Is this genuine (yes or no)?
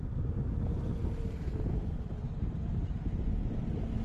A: yes